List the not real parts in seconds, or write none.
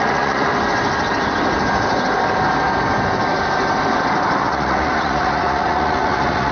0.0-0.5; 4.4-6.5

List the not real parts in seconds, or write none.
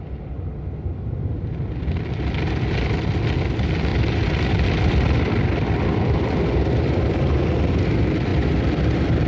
3.9-7.2